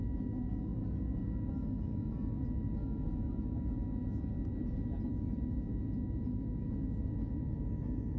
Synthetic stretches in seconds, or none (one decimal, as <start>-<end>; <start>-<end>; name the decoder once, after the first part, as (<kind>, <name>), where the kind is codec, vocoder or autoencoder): none